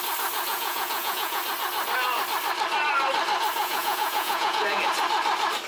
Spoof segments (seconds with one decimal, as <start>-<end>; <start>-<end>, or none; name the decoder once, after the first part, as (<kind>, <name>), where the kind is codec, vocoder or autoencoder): 0.5-1.4 (vocoder, Vocos); 3.6-4.8

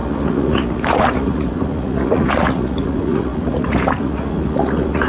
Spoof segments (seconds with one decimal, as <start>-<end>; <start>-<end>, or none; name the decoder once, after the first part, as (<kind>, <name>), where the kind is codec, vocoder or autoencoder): 0.0-5.1 (vocoder, Vocos)

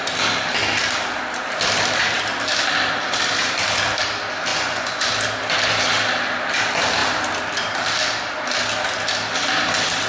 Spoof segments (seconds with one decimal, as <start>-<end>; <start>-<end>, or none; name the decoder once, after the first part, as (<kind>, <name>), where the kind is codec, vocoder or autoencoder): 4.5-5.1 (vocoder, Vocos)

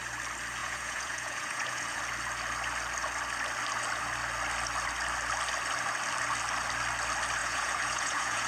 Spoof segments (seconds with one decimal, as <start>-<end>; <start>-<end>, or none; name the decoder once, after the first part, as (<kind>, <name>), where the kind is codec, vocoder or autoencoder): 0.6-2.0 (vocoder, Vocos); 7.4-8.5

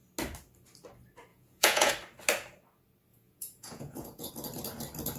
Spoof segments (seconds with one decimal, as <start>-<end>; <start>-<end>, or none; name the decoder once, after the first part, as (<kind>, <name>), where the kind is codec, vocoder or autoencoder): 1.3-1.9 (vocoder, Vocos); 3.1-4.3

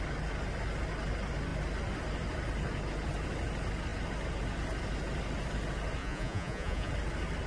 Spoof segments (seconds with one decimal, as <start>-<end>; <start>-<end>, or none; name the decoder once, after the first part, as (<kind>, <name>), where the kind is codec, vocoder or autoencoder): 6.0-6.9 (vocoder, Vocos)

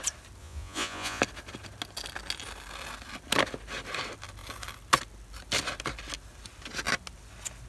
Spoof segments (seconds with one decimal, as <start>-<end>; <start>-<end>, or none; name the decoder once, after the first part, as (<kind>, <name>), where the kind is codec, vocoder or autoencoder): 0.4-1.2 (vocoder, Vocos)